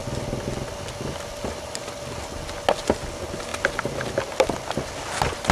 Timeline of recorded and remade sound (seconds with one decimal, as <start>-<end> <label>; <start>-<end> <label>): 0.0-5.5 recorded

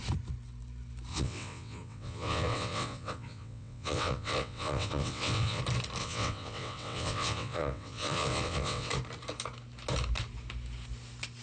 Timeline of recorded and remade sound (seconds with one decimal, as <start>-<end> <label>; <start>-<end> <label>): 0.0-1.1 recorded; 1.1-5.6 remade; 5.6-6.0 recorded; 6.0-8.9 remade; 8.9-11.4 recorded